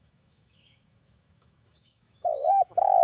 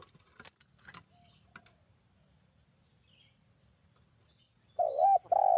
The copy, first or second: first